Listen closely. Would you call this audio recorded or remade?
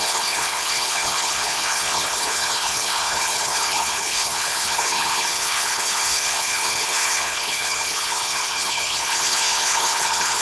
remade